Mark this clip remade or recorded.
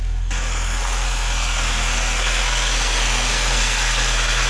remade